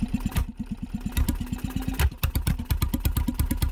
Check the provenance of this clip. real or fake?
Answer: fake